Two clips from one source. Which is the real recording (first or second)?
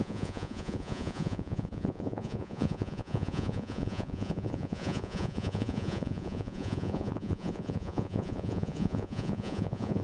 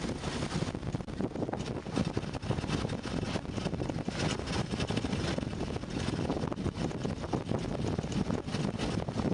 second